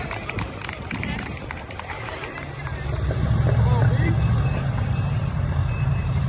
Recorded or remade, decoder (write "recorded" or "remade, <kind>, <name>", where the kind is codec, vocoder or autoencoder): remade, vocoder, BigVGAN v2